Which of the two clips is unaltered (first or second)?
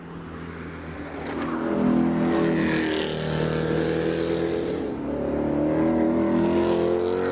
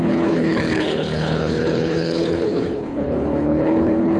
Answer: first